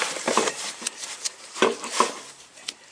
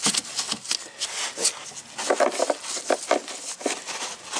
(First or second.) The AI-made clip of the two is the first